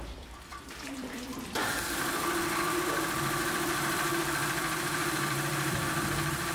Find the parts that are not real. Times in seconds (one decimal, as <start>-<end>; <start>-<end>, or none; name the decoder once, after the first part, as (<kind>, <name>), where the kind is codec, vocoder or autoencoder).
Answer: 0.0-6.5 (vocoder, BigVGAN v2)

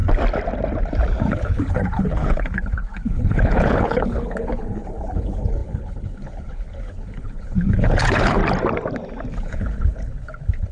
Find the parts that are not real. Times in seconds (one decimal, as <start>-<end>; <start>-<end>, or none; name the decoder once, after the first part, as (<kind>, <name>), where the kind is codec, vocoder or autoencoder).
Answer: 1.3-8.4 (codec, HILCodec); 9.3-10.7

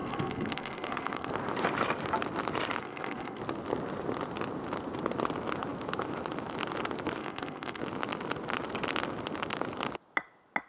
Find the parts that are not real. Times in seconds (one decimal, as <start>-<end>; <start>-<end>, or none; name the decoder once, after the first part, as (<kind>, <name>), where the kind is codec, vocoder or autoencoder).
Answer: 0.0-1.3 (codec, SNAC); 2.8-3.4; 7.2-7.8